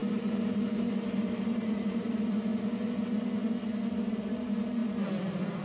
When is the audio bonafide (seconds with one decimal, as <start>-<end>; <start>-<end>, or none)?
2.5-4.1; 4.8-5.6